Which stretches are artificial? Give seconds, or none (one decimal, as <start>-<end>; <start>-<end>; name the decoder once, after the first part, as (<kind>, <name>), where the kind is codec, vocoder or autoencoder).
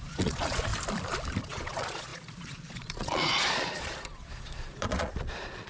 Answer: 0.0-0.7 (vocoder, Vocos); 1.4-5.7